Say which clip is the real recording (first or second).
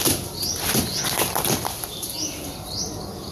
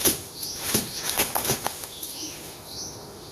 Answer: first